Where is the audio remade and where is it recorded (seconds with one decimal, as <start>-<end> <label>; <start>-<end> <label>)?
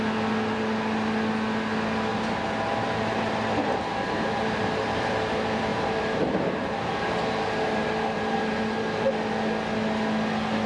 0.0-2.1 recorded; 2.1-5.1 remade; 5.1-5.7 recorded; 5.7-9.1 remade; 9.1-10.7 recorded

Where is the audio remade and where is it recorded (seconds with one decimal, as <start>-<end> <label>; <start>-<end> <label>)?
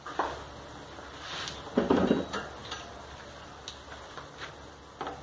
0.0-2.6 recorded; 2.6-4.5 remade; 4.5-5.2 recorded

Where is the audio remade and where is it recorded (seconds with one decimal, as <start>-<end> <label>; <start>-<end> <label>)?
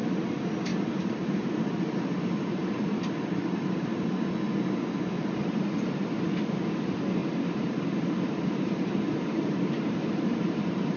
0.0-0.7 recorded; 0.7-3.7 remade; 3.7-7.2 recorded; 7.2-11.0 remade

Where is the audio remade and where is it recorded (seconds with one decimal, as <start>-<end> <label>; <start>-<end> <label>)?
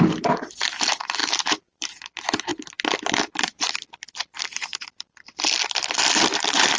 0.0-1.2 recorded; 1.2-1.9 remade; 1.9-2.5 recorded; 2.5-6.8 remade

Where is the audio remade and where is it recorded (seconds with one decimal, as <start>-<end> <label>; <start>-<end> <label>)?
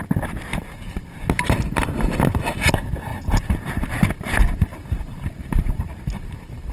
0.0-0.5 recorded; 0.5-1.0 remade; 1.0-3.1 recorded; 3.1-3.7 remade; 3.7-4.7 recorded; 4.7-5.8 remade; 5.8-6.7 recorded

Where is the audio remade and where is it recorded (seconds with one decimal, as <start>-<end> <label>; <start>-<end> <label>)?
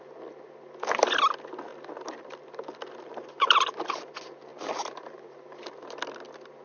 0.0-1.7 recorded; 1.7-4.1 remade; 4.1-4.5 recorded; 4.5-6.0 remade; 6.0-6.6 recorded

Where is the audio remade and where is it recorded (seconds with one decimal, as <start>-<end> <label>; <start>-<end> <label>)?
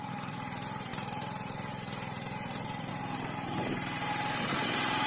0.0-0.9 recorded; 0.9-2.9 remade; 2.9-5.1 recorded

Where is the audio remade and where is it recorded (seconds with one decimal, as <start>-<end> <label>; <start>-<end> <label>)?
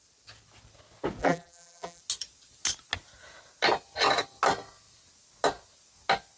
0.0-1.2 recorded; 1.2-2.0 remade; 2.0-6.4 recorded